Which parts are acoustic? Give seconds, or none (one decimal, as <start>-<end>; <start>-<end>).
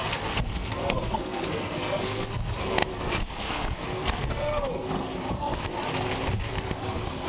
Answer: 5.7-6.4